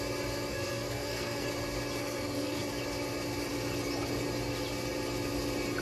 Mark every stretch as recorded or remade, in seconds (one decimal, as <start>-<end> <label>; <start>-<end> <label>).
0.0-0.5 recorded; 0.5-1.5 remade; 1.5-2.0 recorded; 2.0-2.6 remade; 2.6-5.8 recorded